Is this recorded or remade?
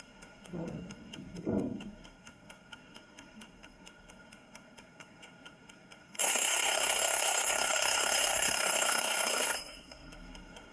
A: remade